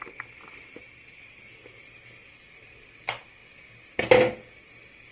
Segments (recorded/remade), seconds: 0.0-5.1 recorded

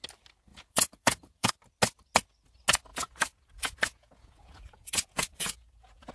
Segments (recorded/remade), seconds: 0.0-0.5 recorded; 0.5-1.5 remade; 1.5-2.9 recorded; 2.9-6.1 remade

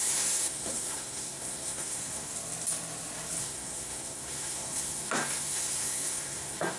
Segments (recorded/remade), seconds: 0.0-2.3 remade; 2.3-3.4 recorded; 3.4-6.8 remade